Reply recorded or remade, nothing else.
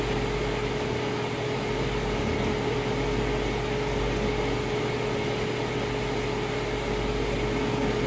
recorded